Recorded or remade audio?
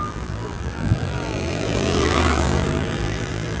remade